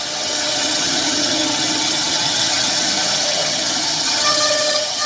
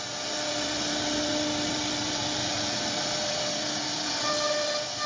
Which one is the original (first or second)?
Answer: second